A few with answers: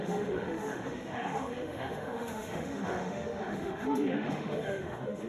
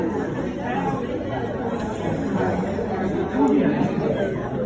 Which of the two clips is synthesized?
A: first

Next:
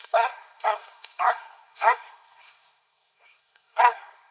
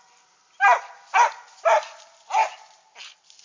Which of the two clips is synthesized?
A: first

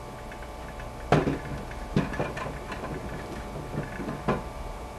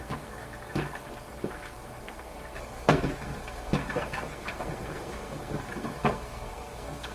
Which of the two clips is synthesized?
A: second